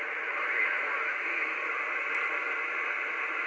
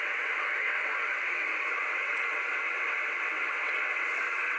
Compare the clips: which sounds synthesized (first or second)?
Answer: second